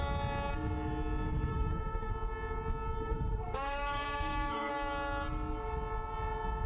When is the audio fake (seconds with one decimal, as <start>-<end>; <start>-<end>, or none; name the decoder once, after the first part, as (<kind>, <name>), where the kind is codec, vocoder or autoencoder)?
1.5-2.1 (codec, SNAC); 3.0-4.7

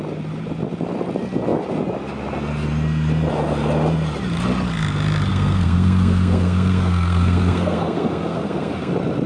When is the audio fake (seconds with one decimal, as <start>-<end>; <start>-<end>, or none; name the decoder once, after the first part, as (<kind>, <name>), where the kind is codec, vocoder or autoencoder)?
5.3-8.9 (codec, SNAC)

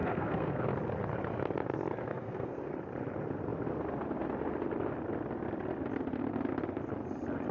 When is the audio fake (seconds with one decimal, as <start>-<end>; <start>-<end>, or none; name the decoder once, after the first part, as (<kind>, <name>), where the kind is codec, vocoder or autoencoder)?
0.0-0.6 (codec, SNAC); 2.0-2.7

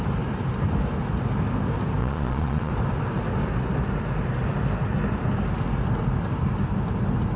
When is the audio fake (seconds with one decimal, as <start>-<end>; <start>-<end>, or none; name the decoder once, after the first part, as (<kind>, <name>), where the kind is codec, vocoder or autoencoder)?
2.0-2.7 (vocoder, Vocos)

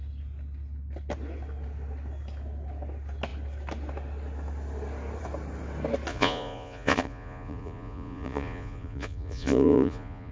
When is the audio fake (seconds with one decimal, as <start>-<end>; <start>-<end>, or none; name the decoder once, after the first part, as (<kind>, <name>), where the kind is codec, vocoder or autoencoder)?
6.1-10.3 (vocoder, Vocos)